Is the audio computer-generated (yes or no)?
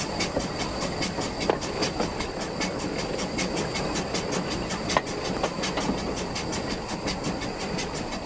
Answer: no